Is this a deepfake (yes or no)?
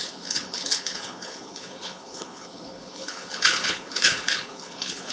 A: yes